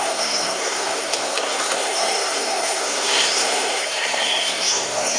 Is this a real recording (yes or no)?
no